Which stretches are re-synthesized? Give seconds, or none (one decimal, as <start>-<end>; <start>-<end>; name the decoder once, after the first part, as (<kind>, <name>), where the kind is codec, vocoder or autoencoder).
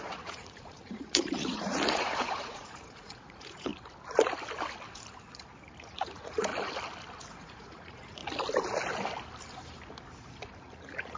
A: 0.0-3.7 (vocoder, Vocos); 5.8-6.5; 7.3-8.2; 10.7-11.2